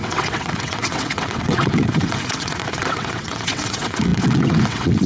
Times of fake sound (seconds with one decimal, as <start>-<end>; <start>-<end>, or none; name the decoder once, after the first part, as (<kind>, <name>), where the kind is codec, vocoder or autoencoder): 0.0-5.1 (vocoder, WaveNeXt)